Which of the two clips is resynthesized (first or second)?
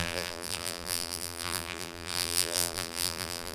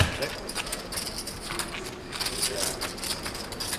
first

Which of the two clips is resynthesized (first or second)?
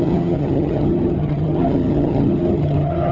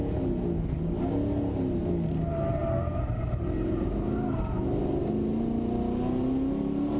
first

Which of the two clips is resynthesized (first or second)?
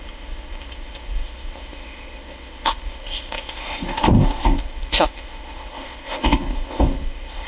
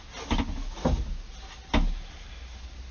first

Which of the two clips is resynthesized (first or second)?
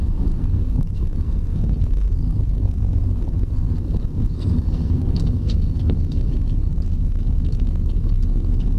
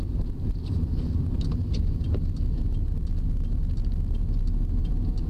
first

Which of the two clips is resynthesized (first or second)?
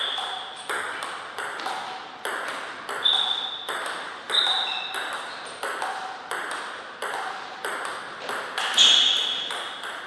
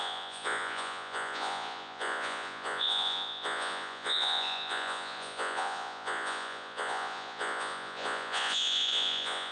second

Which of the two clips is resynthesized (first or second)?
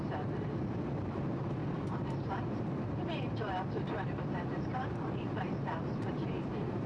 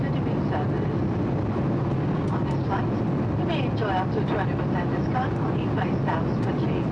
first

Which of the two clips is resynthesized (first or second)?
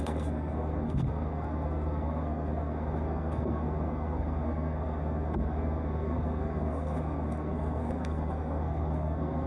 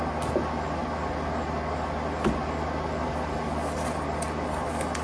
first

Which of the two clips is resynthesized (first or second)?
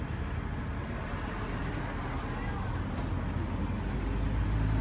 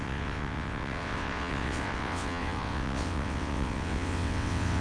second